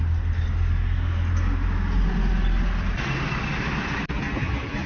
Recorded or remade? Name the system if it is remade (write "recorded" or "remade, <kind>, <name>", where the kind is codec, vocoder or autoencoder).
recorded